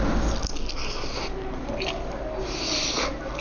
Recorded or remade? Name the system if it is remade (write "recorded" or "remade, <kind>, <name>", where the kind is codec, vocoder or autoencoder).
recorded